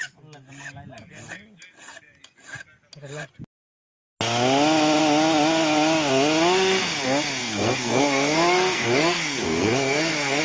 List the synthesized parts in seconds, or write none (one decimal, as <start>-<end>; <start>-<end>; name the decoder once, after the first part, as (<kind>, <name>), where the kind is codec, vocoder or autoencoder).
7.4-10.4 (codec, SNAC)